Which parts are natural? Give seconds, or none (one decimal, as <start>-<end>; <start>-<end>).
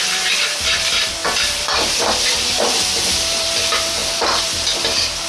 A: 0.0-5.3